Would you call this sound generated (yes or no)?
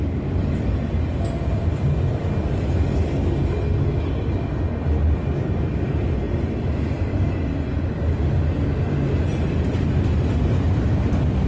no